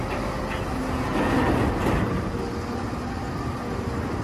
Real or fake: real